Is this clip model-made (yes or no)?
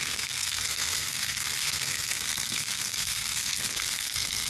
yes